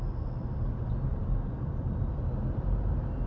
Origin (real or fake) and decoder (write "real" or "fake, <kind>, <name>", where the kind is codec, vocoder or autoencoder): real